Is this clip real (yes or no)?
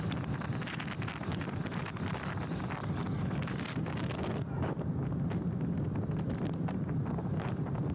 no